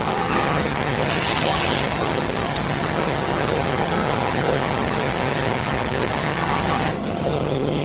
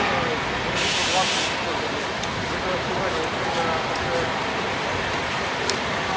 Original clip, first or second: second